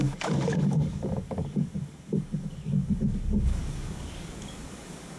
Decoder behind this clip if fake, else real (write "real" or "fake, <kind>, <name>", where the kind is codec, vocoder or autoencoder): fake, codec, DAC